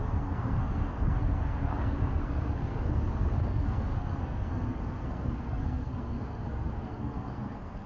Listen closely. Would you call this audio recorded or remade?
remade